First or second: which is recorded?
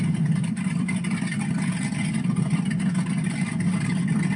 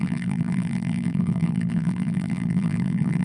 first